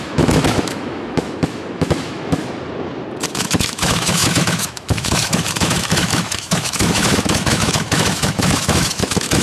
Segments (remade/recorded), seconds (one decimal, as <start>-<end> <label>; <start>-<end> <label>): 0.0-2.4 remade; 2.4-3.3 recorded; 3.3-9.4 remade